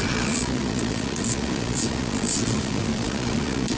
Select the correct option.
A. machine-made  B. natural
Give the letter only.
A